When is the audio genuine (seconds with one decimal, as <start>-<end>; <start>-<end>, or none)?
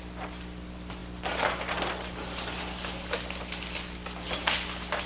0.0-1.0; 2.6-5.1